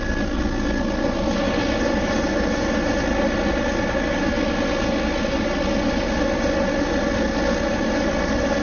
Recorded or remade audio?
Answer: recorded